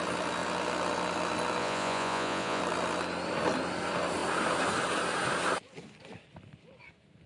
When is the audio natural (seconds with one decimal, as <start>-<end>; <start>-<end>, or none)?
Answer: 0.0-1.6; 2.6-7.3